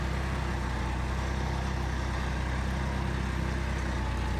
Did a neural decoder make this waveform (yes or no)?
no